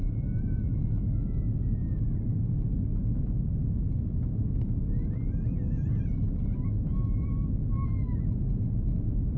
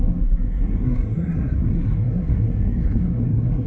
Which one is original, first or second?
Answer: first